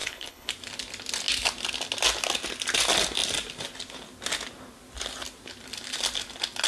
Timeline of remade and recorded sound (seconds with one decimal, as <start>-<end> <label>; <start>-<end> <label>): 0.0-0.5 remade; 0.5-6.7 recorded